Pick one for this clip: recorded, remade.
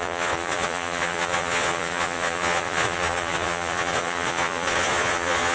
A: remade